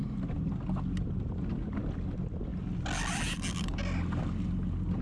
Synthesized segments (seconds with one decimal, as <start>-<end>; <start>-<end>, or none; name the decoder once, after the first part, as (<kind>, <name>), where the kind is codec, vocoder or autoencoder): none